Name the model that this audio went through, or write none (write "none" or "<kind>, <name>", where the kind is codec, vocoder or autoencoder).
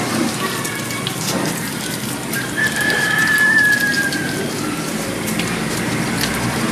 vocoder, BigVGAN v2